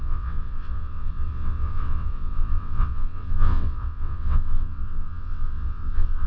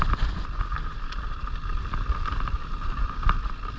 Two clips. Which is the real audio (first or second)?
second